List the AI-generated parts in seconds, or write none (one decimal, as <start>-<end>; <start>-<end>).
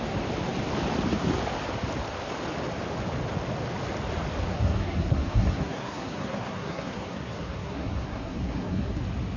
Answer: 4.5-9.0